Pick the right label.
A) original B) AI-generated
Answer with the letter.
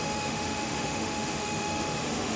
B